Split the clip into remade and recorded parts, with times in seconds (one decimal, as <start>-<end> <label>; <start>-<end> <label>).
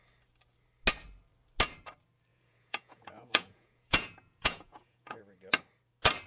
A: 0.0-2.3 recorded; 2.3-5.2 remade; 5.2-6.3 recorded